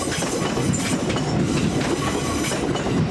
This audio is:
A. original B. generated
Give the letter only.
A